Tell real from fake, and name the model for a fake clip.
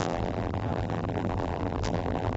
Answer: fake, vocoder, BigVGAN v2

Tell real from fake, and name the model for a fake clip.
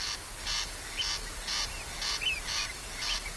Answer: real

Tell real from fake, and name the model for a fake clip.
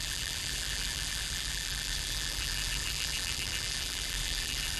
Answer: fake, vocoder, BigVGAN v2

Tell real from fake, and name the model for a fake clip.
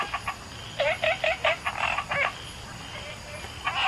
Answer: real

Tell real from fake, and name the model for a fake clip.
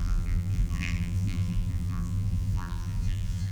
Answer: fake, vocoder, BigVGAN v2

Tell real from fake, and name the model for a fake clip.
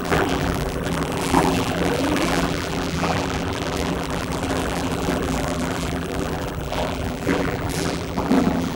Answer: fake, vocoder, BigVGAN v2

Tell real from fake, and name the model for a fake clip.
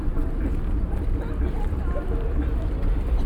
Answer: fake, vocoder, BigVGAN v2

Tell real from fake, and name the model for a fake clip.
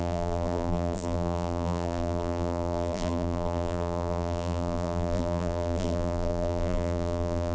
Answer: fake, vocoder, BigVGAN v2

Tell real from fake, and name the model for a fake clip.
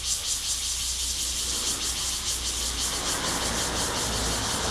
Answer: real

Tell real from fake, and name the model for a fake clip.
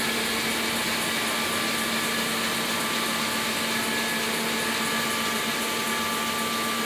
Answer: real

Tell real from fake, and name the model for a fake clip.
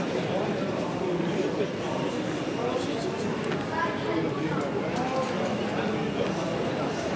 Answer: fake, vocoder, BigVGAN v2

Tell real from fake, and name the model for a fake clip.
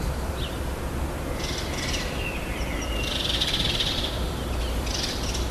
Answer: fake, vocoder, BigVGAN v2